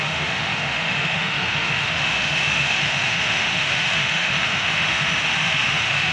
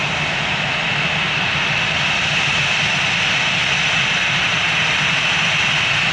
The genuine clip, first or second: second